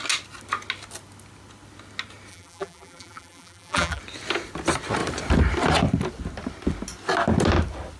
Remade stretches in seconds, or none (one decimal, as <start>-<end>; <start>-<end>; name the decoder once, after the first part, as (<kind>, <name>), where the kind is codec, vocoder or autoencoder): 2.3-4.0 (vocoder, BigVGAN v2)